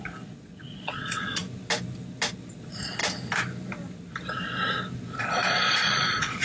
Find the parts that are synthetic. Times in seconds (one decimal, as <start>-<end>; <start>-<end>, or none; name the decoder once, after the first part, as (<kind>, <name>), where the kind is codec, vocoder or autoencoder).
0.0-1.4 (vocoder, Vocos); 2.5-3.0; 5.2-6.4